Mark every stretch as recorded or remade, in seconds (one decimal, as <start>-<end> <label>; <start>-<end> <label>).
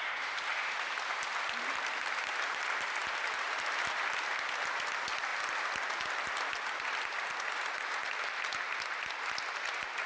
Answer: 0.0-10.1 recorded